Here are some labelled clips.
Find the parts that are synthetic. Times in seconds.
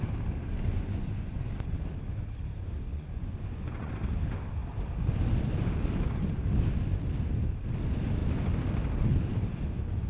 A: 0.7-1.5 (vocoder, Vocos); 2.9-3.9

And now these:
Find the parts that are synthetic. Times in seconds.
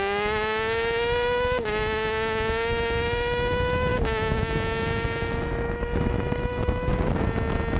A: 0.0-6.9 (autoencoder, DAC-VAE)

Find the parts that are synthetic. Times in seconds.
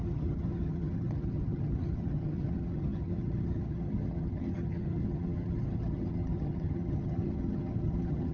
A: 0.0-8.3 (vocoder, HiFi-GAN)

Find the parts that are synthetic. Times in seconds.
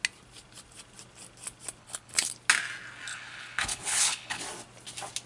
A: 1.8-2.3 (codec, HILCodec); 3.1-4.4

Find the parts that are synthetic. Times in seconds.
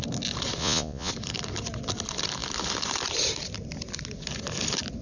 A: 0.6-1.1 (vocoder, Vocos)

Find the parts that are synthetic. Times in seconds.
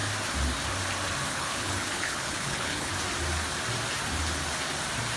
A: 1.3-2.9 (codec, HILCodec)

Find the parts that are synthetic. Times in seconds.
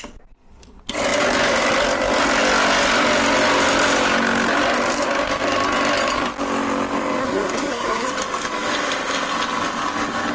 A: 7.2-8.1 (codec, SNAC)